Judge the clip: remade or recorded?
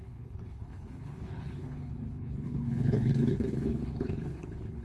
remade